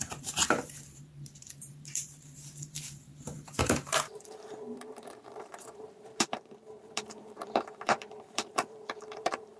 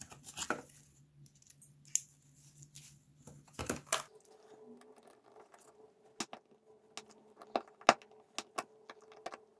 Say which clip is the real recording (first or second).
second